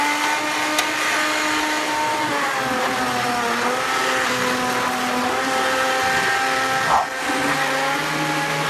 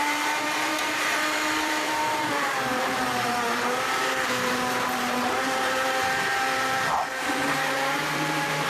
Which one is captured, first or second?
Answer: first